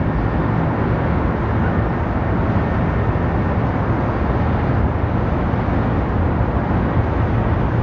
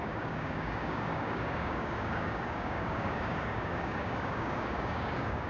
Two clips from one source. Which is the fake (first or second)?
second